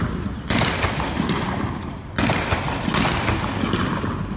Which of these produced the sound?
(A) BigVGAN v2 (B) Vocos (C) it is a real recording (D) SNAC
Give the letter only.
C